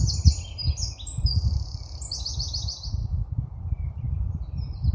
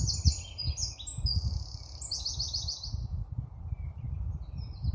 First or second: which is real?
second